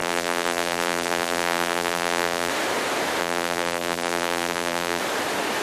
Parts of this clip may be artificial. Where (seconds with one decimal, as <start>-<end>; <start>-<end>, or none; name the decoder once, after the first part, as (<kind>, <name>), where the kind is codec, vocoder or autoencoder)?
0.0-2.5 (vocoder, BigVGAN v2); 3.2-5.0